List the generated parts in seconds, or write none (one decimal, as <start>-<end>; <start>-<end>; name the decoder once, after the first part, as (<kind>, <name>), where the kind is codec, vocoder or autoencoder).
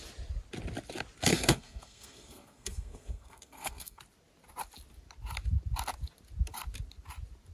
1.3-4.0 (codec, SNAC)